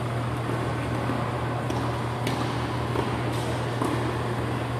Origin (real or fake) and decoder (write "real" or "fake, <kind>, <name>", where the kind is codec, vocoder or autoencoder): real